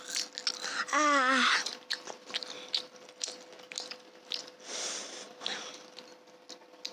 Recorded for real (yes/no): yes